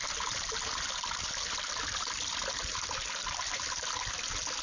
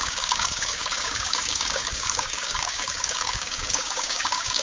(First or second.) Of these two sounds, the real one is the first